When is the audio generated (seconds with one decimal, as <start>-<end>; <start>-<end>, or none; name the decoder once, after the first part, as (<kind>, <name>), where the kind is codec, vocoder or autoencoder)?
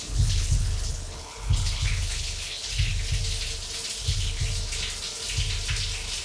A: 0.0-2.9 (codec, HILCodec); 4.0-4.4